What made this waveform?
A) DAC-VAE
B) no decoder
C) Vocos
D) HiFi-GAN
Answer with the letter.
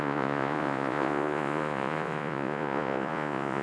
C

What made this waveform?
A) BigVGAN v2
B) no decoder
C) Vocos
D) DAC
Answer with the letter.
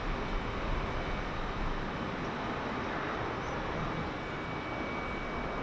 B